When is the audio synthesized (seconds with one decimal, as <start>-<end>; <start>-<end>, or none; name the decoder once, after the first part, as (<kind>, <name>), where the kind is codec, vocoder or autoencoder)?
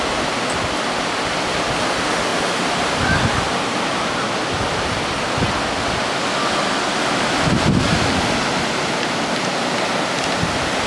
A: 2.3-3.0 (vocoder, BigVGAN v2)